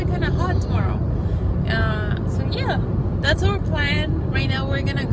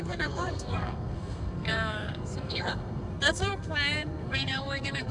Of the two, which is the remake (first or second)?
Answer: second